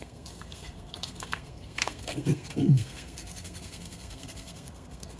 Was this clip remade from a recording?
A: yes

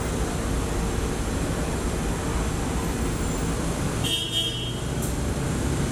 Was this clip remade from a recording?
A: no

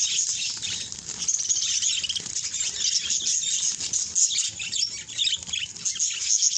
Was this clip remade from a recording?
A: no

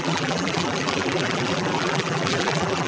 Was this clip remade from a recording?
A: yes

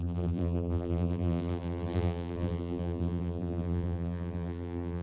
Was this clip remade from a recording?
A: yes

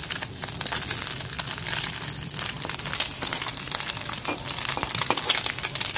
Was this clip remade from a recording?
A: no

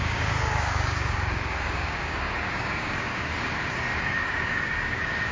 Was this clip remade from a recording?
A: yes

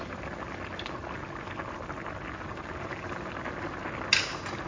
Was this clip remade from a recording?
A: no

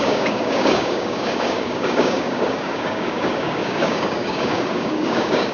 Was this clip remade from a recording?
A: yes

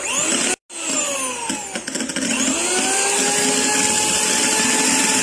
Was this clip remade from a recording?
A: no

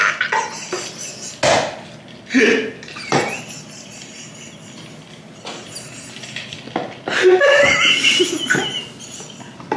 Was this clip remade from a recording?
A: no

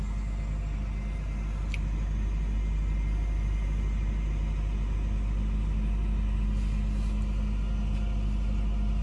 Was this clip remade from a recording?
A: no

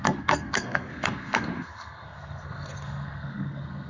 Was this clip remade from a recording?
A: yes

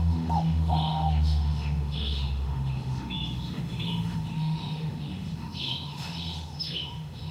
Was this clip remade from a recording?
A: yes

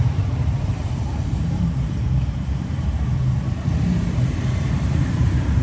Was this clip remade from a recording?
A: yes